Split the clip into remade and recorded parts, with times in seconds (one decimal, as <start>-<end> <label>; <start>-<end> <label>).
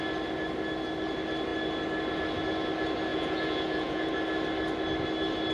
0.0-3.1 recorded; 3.1-4.1 remade; 4.1-5.5 recorded